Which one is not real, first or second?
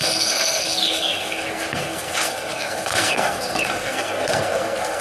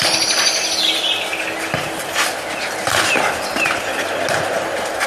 first